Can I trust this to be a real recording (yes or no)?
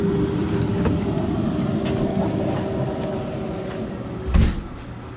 yes